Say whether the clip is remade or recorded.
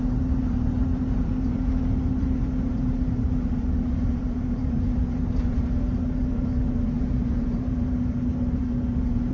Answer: remade